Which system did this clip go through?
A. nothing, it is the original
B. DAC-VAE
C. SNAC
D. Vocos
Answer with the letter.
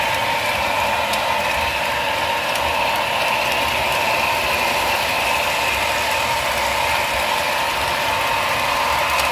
A